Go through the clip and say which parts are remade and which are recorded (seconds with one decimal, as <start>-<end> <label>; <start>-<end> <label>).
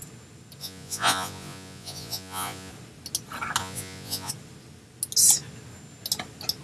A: 0.0-0.6 recorded; 0.6-2.7 remade; 2.7-3.6 recorded; 3.6-4.3 remade; 4.3-6.6 recorded